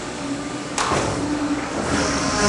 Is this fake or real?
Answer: fake